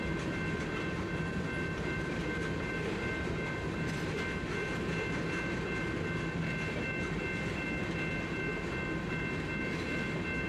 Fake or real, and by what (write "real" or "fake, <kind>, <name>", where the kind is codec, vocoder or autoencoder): real